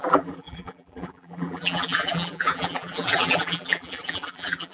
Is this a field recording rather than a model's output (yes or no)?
no